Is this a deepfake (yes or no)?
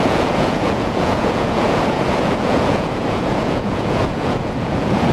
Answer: yes